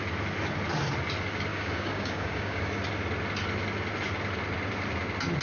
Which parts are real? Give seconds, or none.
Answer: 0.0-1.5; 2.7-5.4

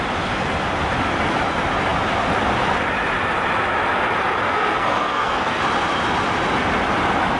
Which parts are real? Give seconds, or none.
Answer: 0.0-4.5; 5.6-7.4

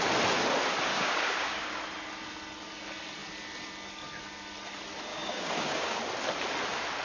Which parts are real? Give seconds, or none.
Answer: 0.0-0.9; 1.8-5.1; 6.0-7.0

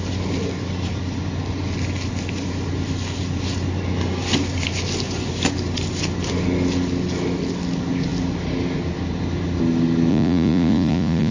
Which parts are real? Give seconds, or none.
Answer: 0.0-10.1